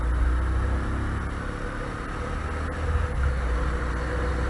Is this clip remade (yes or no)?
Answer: no